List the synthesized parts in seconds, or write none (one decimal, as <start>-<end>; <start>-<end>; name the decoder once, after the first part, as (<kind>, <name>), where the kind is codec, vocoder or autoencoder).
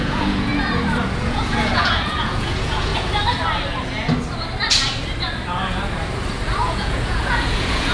0.0-0.5 (vocoder, Vocos); 1.2-2.9; 6.6-7.9